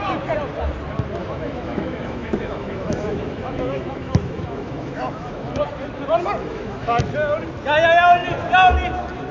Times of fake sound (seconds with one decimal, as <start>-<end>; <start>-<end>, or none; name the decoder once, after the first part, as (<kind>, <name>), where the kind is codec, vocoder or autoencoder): 1.2-5.6 (autoencoder, DAC-VAE); 6.4-7.0